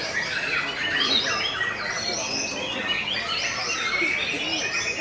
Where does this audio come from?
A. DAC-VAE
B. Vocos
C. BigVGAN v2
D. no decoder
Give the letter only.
D